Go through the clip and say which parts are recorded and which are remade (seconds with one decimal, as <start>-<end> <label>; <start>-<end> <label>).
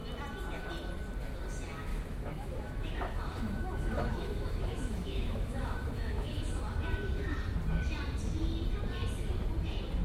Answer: 0.0-1.9 recorded; 1.9-6.6 remade; 6.6-10.0 recorded